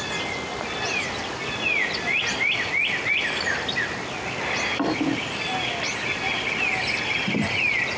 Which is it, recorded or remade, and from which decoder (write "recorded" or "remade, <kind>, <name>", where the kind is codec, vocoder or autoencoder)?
recorded